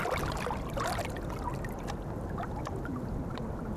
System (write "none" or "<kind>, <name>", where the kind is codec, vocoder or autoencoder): none